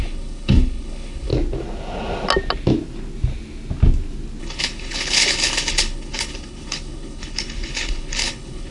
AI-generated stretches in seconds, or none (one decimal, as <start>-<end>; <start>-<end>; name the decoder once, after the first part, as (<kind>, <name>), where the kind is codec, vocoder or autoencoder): 0.0-1.3 (codec, HILCodec); 4.4-8.7

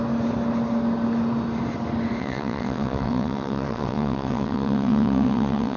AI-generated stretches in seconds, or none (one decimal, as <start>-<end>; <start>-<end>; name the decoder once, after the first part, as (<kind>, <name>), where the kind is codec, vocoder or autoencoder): 2.2-5.8 (vocoder, WaveNeXt)

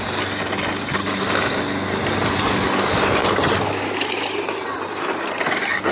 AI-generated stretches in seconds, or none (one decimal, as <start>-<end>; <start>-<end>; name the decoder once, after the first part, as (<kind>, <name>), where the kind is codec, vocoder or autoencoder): none

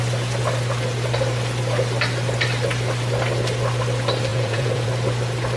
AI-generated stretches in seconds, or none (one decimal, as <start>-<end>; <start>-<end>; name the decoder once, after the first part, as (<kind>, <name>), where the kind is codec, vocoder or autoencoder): 4.3-4.9 (vocoder, Vocos)

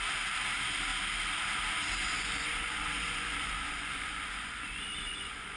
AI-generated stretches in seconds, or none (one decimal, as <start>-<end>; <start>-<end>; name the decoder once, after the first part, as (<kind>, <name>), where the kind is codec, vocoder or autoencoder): 2.0-5.6 (vocoder, Vocos)

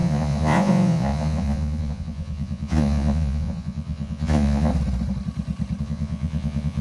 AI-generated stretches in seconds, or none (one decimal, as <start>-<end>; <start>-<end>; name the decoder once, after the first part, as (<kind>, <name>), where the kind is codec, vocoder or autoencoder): 0.0-4.7 (vocoder, Vocos); 5.8-6.8

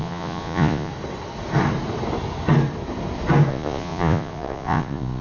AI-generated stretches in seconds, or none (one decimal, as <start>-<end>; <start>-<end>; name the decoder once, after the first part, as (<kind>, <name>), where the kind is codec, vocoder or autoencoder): 0.0-0.9 (vocoder, Vocos); 3.5-5.2